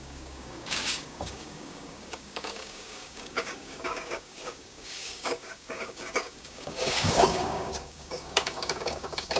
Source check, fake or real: fake